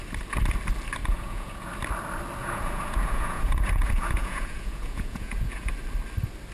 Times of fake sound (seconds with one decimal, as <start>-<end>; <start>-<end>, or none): 1.0-1.7; 2.4-5.7